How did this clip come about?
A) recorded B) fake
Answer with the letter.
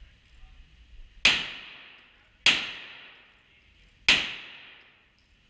A